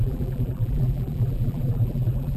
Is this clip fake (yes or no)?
yes